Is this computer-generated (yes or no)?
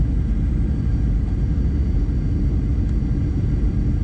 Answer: no